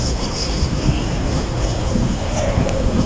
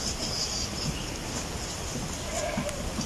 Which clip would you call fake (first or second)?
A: first